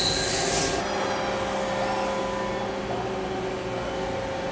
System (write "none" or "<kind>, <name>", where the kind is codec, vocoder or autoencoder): none